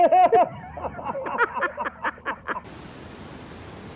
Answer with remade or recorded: recorded